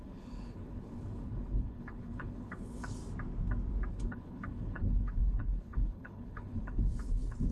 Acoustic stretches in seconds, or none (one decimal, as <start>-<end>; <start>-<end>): 3.0-3.9